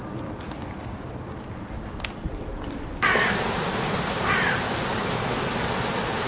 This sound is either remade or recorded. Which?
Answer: recorded